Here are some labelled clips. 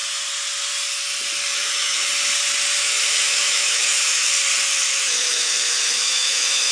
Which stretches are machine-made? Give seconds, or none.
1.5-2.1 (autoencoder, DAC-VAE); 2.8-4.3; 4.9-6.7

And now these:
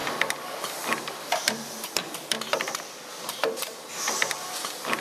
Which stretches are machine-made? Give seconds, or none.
0.0-3.0 (vocoder, BigVGAN v2)

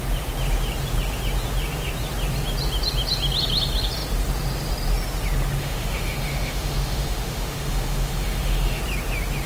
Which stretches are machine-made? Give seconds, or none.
5.6-8.8 (autoencoder, DAC-VAE)

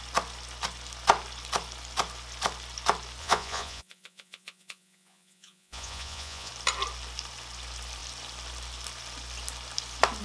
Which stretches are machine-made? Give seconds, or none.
3.2-6.5 (vocoder, Vocos)

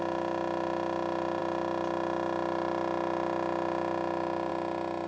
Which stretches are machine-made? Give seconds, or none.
none

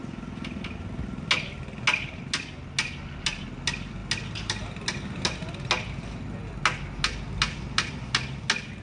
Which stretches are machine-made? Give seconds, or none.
none